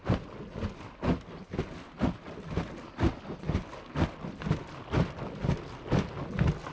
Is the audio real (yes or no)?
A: yes